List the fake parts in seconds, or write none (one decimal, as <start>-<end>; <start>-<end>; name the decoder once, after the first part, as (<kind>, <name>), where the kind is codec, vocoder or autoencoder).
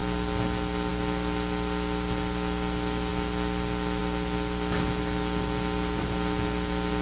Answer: none